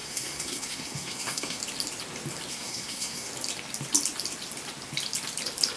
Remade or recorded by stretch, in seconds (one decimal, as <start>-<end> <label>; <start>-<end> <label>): 0.0-1.6 remade; 1.6-2.5 recorded; 2.5-3.3 remade; 3.3-5.8 recorded